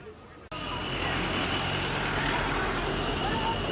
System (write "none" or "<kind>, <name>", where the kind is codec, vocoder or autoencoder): none